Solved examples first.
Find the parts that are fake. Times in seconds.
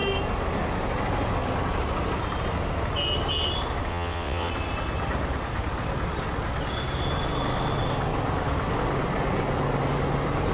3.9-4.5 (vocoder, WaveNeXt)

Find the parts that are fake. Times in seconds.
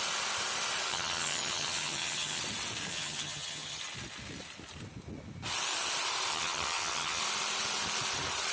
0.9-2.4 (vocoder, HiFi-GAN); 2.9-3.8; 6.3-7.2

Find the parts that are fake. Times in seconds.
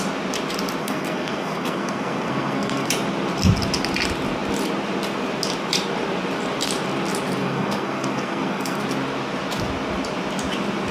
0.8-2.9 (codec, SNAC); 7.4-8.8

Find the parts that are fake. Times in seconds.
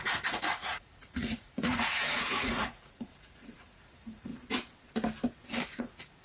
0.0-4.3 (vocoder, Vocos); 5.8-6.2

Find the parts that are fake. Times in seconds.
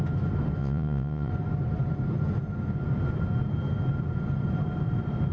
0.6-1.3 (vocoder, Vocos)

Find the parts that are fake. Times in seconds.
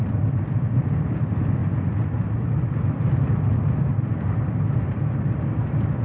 none